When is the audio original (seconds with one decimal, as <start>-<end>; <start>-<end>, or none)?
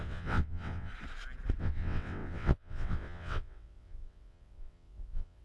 0.9-1.6